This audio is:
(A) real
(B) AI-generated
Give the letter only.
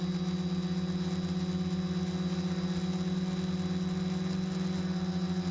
A